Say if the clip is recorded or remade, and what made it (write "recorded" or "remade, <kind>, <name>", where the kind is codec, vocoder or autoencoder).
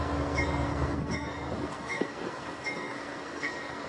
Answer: remade, codec, SNAC